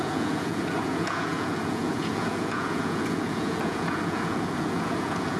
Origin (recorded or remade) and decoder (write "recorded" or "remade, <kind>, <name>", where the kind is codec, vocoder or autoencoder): remade, vocoder, Vocos